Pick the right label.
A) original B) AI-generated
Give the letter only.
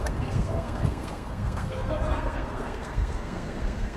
B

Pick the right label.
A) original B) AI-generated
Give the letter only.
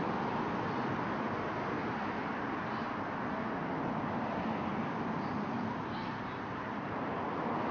A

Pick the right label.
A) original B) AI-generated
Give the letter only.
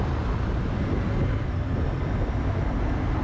A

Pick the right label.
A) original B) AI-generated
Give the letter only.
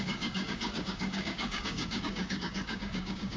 B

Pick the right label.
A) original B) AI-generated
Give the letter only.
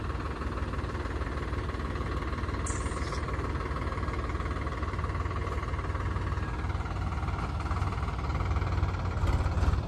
A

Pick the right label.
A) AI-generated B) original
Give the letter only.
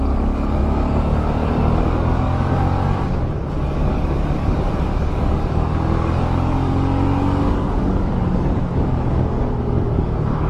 A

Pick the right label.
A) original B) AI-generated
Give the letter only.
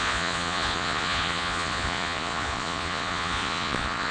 B